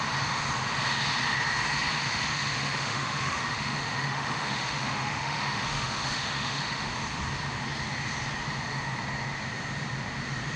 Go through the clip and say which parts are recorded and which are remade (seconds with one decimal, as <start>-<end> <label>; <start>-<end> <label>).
0.0-2.0 recorded; 2.0-6.9 remade; 6.9-10.6 recorded